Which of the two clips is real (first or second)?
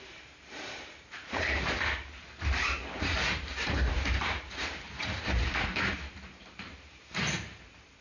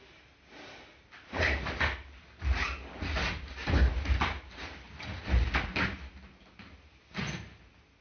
second